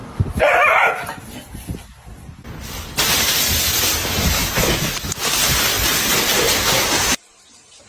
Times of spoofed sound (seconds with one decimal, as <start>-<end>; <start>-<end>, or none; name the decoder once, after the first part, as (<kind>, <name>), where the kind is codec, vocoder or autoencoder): 0.0-4.4 (vocoder, BigVGAN v2); 5.2-7.9